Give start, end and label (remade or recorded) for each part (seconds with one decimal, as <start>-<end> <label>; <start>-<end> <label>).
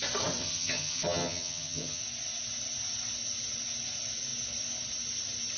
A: 0.0-0.4 recorded; 0.4-2.0 remade; 2.0-5.6 recorded